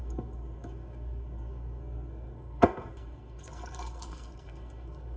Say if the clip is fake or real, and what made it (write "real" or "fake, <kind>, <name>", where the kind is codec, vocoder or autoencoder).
fake, codec, SNAC